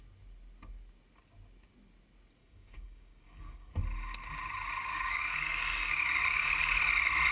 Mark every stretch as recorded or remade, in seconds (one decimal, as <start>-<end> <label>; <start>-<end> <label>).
0.0-2.4 recorded; 2.4-3.7 remade; 3.7-4.9 recorded; 4.9-6.8 remade; 6.8-7.3 recorded